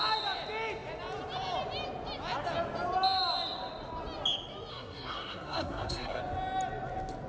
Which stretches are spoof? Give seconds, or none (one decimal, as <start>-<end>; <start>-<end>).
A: 4.7-6.2